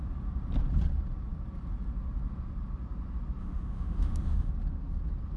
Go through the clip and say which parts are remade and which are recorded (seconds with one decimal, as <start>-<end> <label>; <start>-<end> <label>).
0.0-3.4 recorded; 3.4-4.5 remade; 4.5-5.4 recorded